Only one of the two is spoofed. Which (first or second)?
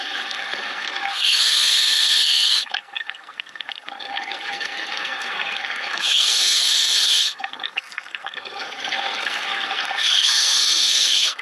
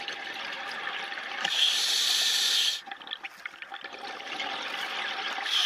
first